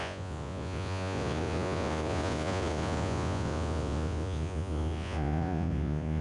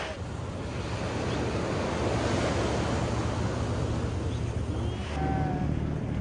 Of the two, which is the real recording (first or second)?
second